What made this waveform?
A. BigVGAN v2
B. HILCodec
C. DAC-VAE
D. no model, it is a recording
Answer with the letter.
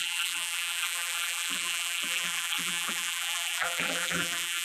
A